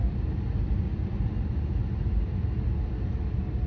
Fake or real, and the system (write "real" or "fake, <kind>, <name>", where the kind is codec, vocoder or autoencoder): real